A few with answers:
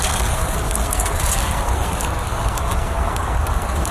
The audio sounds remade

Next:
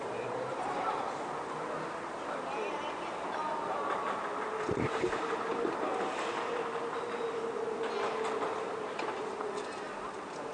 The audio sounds recorded